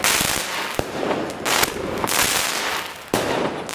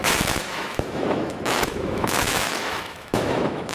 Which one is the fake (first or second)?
second